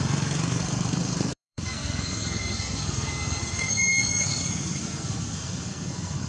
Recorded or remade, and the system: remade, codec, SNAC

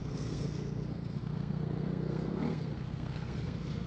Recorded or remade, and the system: remade, codec, SNAC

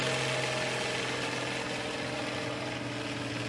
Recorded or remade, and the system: recorded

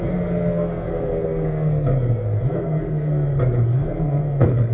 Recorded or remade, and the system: remade, codec, SNAC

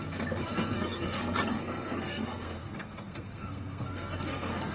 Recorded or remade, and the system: remade, codec, SNAC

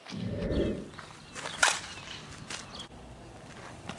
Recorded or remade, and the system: recorded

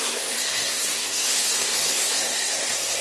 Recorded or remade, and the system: remade, codec, SNAC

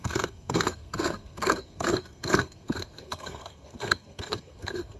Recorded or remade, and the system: remade, codec, SNAC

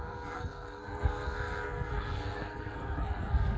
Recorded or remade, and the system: remade, codec, SNAC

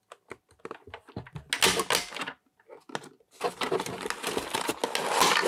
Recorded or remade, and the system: recorded